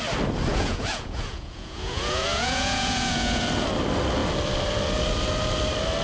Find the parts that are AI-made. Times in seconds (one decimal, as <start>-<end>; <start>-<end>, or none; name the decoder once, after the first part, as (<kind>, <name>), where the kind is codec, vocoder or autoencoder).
0.5-3.4 (vocoder, Vocos)

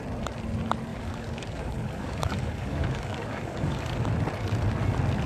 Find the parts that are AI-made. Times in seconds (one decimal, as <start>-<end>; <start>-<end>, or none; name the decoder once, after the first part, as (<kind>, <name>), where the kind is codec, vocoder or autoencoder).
0.9-4.1 (codec, DAC)

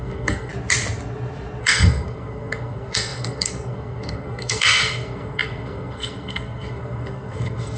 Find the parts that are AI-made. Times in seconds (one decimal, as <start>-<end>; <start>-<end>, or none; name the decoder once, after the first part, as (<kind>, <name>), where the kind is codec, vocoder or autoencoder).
0.0-0.5 (codec, SNAC); 1.6-7.8

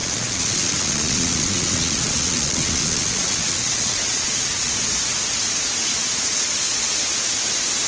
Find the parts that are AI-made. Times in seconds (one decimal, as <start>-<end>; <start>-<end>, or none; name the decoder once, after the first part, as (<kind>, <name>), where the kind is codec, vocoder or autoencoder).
0.0-4.7 (vocoder, Vocos); 5.9-6.9

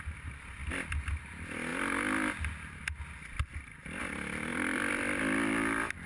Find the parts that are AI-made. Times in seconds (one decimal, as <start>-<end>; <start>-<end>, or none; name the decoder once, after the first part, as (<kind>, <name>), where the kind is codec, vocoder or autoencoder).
0.0-0.6 (vocoder, BigVGAN v2); 1.1-1.7; 4.0-6.1

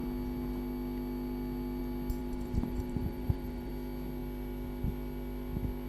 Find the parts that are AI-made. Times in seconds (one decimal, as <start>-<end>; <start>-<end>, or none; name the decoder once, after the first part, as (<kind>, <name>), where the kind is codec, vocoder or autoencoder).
2.2-3.7 (vocoder, BigVGAN v2)